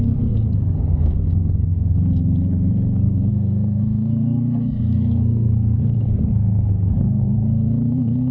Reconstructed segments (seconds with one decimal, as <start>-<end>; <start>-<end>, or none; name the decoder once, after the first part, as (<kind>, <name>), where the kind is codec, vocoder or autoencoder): 0.0-8.3 (codec, SNAC)